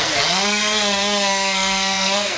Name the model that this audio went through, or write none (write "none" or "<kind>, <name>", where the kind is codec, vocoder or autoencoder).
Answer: codec, SNAC